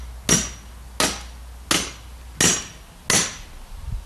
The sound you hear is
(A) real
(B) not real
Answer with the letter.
A